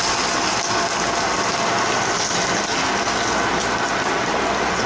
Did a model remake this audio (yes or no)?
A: no